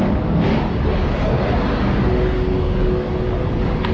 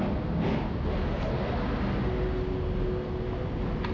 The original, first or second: second